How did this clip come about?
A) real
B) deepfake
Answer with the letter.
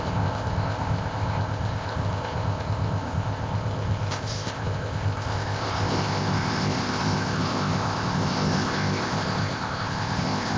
B